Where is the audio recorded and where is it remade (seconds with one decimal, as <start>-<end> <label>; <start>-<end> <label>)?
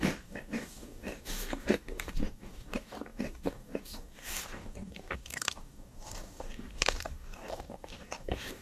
0.0-8.6 remade